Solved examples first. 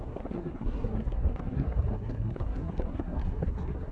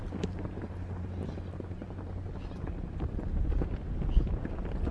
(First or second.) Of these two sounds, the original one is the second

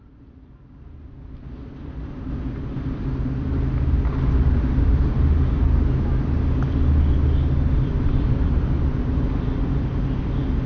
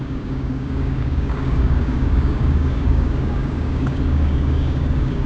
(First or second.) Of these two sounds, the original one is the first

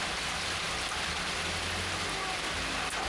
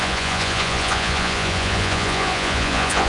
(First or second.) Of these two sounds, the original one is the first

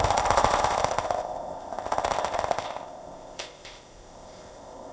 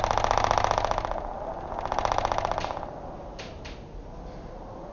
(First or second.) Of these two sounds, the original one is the second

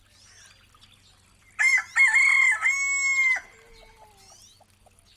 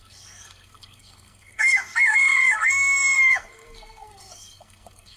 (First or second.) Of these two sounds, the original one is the first